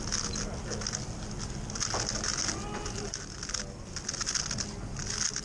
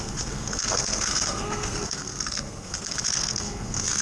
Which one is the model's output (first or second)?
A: second